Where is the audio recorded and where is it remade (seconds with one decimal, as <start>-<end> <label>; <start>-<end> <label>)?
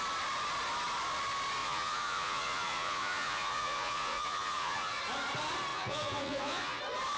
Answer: 0.0-1.6 recorded; 1.6-5.0 remade; 5.0-5.7 recorded; 5.7-6.8 remade; 6.8-7.2 recorded